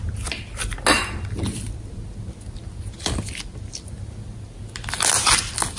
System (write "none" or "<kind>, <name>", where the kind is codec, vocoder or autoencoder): none